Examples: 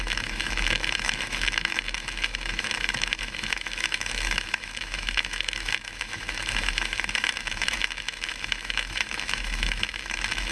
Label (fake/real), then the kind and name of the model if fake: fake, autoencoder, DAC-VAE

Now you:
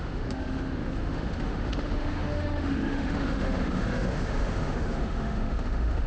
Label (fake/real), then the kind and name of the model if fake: fake, autoencoder, DAC-VAE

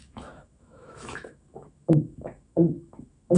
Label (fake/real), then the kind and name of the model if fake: fake, autoencoder, DAC-VAE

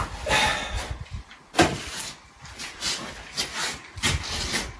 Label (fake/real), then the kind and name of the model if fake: real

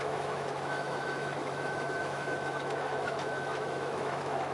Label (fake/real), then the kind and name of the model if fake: fake, autoencoder, DAC-VAE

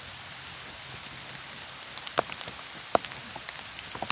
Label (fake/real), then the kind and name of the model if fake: real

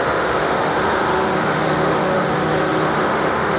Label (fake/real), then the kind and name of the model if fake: fake, autoencoder, DAC-VAE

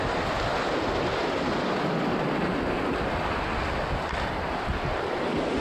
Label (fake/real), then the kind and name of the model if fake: real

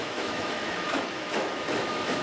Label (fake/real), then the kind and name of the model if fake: fake, autoencoder, DAC-VAE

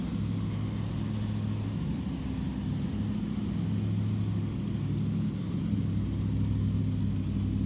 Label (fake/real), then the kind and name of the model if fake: real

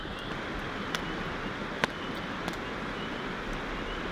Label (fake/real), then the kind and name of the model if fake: real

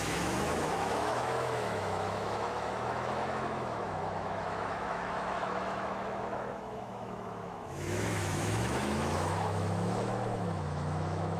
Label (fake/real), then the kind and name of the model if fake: fake, autoencoder, DAC-VAE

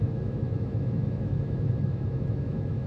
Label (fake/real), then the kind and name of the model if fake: fake, autoencoder, DAC-VAE